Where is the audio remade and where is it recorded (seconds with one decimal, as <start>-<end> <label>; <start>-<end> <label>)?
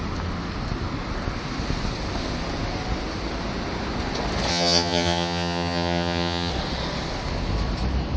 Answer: 0.0-4.5 recorded; 4.5-6.5 remade; 6.5-8.2 recorded